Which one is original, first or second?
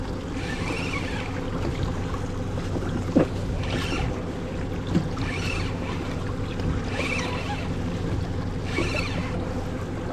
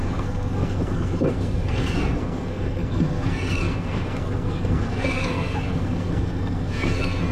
first